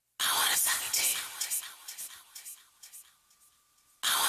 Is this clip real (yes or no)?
yes